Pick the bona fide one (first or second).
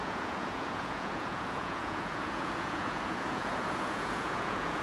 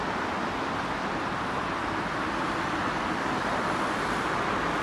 second